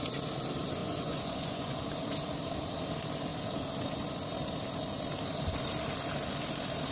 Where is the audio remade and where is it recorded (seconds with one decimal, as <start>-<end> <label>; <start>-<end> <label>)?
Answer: 0.0-0.8 recorded; 0.8-1.8 remade; 1.8-6.9 recorded

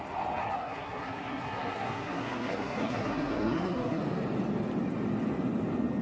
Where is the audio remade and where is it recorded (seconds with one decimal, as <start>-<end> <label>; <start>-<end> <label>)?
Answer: 0.0-0.4 recorded; 0.4-4.0 remade; 4.0-6.0 recorded

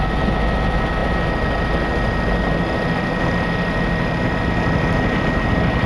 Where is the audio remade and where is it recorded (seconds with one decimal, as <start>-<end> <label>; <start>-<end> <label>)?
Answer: 0.0-5.9 recorded

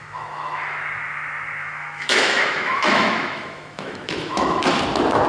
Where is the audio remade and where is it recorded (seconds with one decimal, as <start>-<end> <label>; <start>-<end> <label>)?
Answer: 0.0-0.8 remade; 0.8-1.6 recorded; 1.6-4.8 remade; 4.8-5.3 recorded

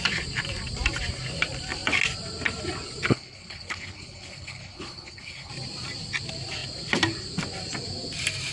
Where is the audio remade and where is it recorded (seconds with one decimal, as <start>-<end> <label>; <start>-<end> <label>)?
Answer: 0.0-3.1 recorded; 3.1-5.5 remade; 5.5-8.5 recorded

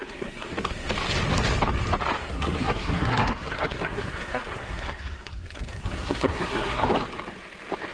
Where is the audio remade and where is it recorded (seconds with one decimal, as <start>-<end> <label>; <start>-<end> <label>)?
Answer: 0.0-0.9 remade; 0.9-2.2 recorded; 2.2-6.9 remade; 6.9-7.9 recorded